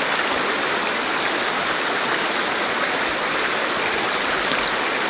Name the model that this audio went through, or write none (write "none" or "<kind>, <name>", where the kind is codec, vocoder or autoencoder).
none